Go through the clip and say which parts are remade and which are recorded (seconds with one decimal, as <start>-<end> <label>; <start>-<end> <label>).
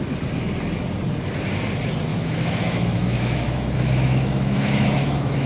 0.0-2.1 recorded; 2.1-5.5 remade